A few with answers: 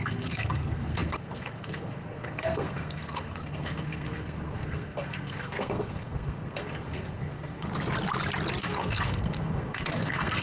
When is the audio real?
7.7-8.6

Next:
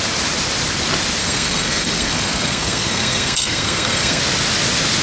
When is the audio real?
0.0-1.2; 4.2-5.0

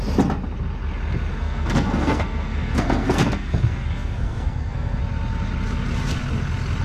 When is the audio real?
0.0-1.3; 5.0-6.8

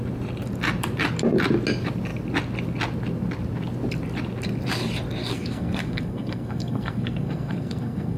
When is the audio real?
0.0-5.2